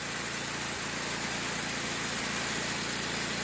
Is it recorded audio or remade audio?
recorded